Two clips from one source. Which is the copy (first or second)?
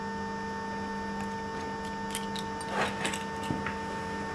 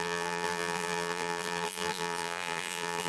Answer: second